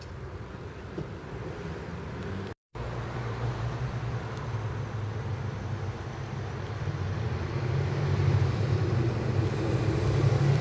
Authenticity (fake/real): fake